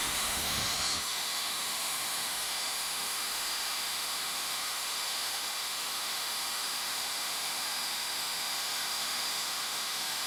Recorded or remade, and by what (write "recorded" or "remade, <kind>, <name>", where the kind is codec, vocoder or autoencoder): remade, autoencoder, DAC-VAE